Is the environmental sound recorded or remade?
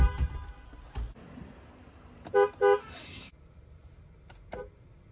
recorded